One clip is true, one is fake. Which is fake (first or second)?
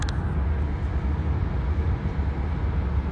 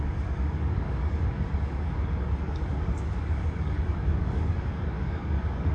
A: second